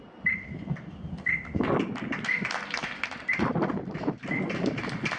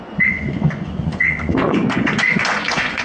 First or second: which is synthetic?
second